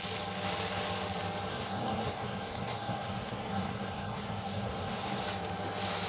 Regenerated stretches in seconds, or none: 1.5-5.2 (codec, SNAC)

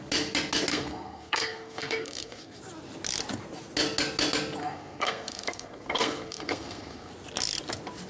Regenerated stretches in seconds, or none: 0.7-2.6 (codec, SNAC); 4.6-7.1

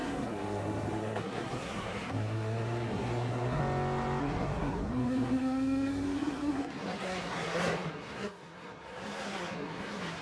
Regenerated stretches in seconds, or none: 0.0-3.6 (codec, SNAC); 4.2-10.2

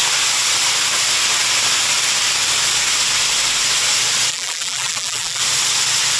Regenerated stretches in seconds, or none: 4.3-5.4 (vocoder, BigVGAN v2)